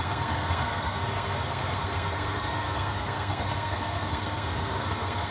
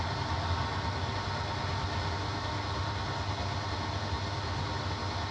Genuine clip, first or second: second